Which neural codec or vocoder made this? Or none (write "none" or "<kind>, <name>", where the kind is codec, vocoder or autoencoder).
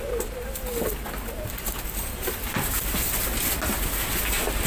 none